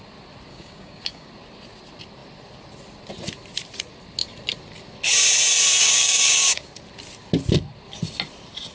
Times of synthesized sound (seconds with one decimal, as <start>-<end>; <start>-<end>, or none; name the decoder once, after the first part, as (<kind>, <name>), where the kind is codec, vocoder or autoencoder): 0.5-1.3 (codec, DAC); 5.8-6.7